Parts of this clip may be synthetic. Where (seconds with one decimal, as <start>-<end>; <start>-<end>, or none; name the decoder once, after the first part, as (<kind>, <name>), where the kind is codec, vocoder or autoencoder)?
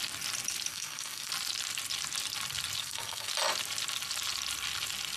0.7-1.3 (codec, SNAC); 2.8-3.3